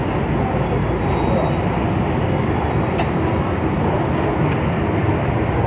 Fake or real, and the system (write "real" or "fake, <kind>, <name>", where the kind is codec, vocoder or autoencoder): real